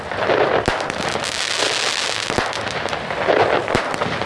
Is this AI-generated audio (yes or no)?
no